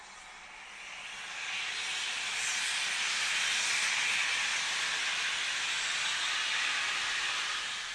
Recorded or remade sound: recorded